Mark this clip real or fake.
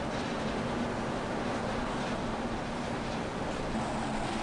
real